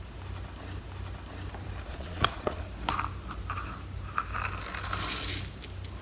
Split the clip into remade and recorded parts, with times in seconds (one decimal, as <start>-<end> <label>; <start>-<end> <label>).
0.0-1.9 recorded; 1.9-2.6 remade; 2.6-6.0 recorded

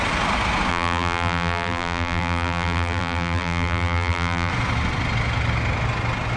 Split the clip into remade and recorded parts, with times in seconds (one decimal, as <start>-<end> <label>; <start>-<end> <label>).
0.0-0.7 recorded; 0.7-4.5 remade; 4.5-6.4 recorded

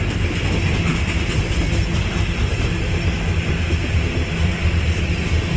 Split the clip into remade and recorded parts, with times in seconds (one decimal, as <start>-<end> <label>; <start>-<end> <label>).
0.0-5.6 recorded

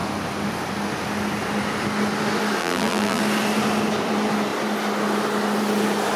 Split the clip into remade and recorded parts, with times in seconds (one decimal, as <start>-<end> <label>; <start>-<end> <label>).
0.0-2.6 recorded; 2.6-3.2 remade; 3.2-6.2 recorded